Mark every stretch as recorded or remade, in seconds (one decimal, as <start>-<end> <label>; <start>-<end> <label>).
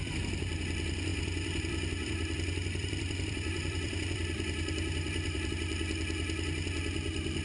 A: 0.0-1.1 recorded; 1.1-5.5 remade; 5.5-7.4 recorded